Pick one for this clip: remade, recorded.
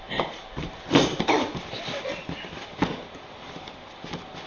remade